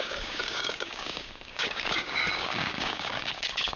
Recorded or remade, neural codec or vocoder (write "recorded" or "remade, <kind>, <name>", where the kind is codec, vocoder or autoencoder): remade, codec, DAC